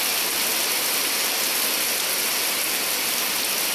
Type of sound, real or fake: real